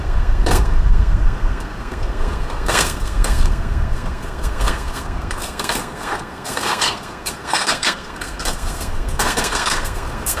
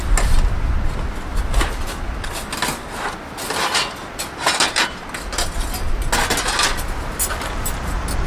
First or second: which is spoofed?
first